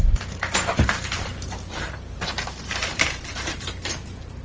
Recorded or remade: remade